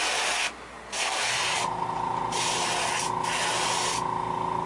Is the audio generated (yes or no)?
no